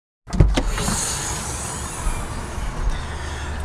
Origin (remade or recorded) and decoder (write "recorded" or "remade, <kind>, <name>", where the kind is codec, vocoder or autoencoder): recorded